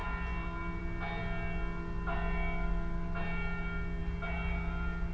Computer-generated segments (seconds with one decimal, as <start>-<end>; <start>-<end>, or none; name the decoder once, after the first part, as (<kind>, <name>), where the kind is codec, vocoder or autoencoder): none